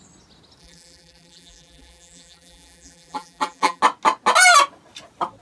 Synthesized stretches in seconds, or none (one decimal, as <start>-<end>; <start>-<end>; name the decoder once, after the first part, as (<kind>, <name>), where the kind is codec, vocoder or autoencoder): 0.6-3.8 (vocoder, BigVGAN v2)